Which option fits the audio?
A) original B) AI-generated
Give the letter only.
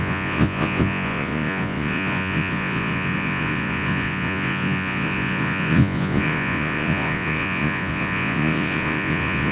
B